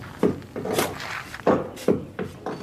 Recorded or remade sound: recorded